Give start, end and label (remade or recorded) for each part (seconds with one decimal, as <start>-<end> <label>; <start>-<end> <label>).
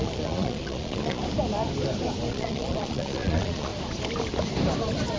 0.0-1.2 remade; 1.2-2.3 recorded; 2.3-3.7 remade; 3.7-5.2 recorded